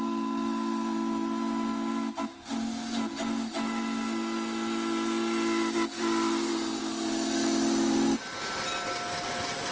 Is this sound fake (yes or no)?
no